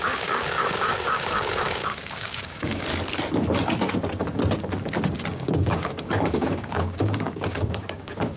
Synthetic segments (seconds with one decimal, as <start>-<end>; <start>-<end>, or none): 0.0-2.9; 5.3-8.4